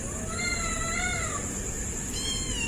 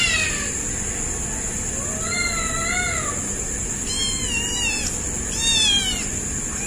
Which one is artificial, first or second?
first